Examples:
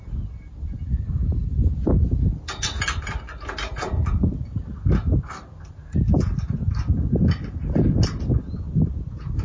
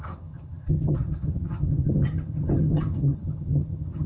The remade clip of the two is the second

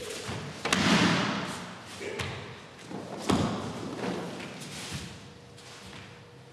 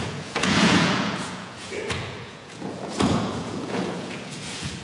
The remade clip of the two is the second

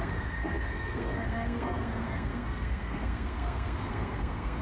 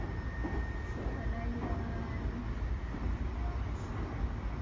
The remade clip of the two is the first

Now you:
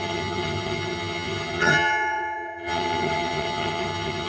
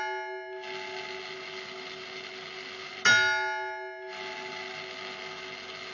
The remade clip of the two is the first